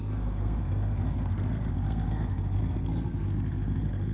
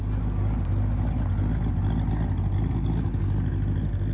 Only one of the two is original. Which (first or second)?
second